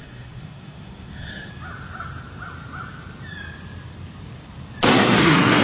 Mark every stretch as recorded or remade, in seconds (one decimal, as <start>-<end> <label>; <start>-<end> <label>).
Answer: 0.0-1.5 remade; 1.5-4.9 recorded; 4.9-5.6 remade